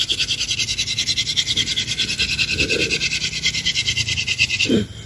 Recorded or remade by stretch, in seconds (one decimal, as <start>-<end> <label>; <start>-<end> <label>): 0.0-5.1 recorded